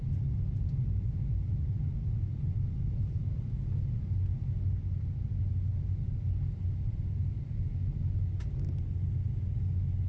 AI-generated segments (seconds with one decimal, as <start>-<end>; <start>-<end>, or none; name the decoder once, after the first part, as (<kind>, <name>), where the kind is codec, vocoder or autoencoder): none

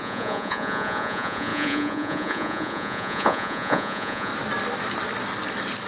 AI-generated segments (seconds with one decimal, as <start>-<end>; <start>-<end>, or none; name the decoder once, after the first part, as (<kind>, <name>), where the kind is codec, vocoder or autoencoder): 0.0-4.3 (vocoder, Vocos)

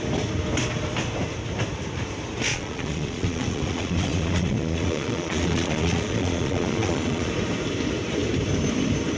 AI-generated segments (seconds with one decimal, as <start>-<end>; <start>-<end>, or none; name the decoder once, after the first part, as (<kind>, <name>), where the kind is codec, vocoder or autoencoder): 2.5-7.3 (vocoder, Vocos)

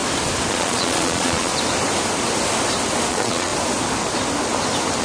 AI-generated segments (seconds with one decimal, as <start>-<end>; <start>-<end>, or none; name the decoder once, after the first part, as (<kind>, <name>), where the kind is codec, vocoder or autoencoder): 0.5-1.5 (vocoder, Vocos); 3.1-3.5